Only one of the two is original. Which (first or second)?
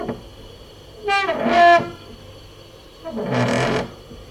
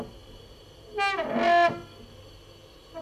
second